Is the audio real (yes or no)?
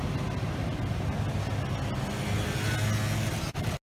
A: yes